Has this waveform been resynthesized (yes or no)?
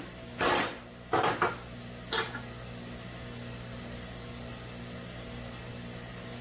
no